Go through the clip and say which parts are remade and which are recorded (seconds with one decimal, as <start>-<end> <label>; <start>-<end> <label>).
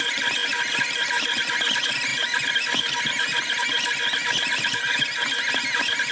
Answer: 0.0-6.1 recorded